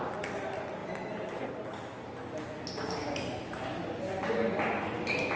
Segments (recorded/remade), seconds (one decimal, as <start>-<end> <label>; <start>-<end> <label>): 0.0-5.4 recorded